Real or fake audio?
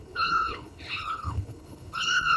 fake